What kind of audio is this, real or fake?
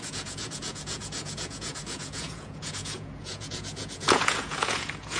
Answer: fake